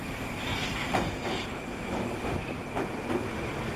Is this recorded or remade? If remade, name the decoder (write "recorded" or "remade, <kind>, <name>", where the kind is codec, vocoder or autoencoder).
remade, vocoder, BigVGAN v2